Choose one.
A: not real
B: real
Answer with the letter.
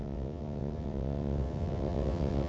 A